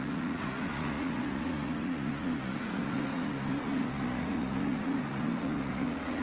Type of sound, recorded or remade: remade